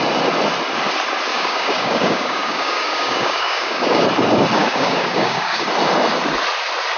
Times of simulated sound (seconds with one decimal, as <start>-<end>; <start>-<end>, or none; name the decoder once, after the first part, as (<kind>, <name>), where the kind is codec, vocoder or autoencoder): 1.3-4.0 (codec, DAC); 4.6-5.7